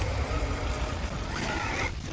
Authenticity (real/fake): real